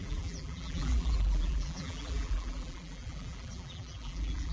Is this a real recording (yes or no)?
no